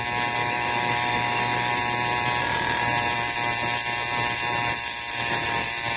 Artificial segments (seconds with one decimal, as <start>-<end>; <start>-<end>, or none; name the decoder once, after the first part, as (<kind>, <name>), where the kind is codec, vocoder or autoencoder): 0.4-1.7 (autoencoder, DAC-VAE)